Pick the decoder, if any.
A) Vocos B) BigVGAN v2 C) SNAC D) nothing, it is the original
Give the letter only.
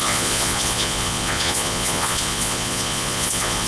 A